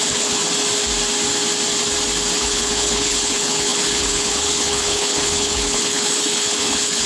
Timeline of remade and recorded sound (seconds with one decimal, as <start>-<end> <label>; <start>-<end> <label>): 0.0-0.4 remade; 0.4-2.4 recorded; 2.4-7.1 remade